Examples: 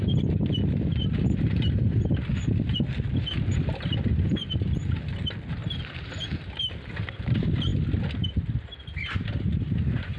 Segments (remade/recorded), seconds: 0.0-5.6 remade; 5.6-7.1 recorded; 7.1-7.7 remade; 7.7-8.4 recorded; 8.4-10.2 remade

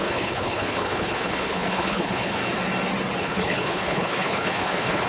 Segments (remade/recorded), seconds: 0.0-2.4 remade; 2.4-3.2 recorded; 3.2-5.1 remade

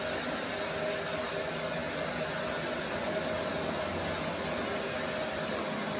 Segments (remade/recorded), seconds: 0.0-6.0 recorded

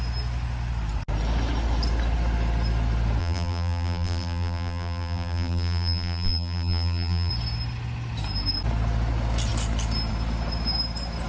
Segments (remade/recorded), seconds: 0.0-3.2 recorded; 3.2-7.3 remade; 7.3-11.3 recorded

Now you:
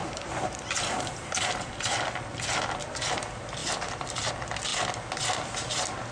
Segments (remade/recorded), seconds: 0.0-1.7 remade; 1.7-3.6 recorded; 3.6-4.3 remade; 4.3-6.1 recorded

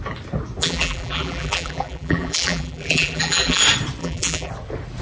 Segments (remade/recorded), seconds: 0.0-0.6 recorded; 0.6-3.6 remade; 3.6-4.0 recorded; 4.0-4.5 remade; 4.5-5.0 recorded